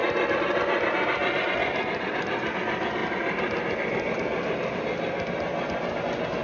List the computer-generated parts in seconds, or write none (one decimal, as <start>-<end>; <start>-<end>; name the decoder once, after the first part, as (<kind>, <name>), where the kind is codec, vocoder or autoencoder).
none